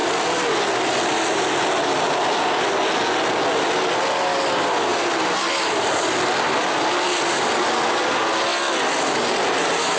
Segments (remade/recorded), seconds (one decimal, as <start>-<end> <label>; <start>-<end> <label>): 0.0-10.0 recorded